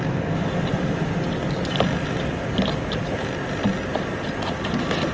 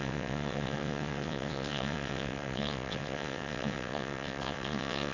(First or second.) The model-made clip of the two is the second